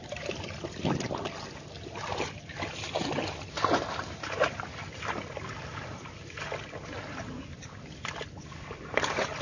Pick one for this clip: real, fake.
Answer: real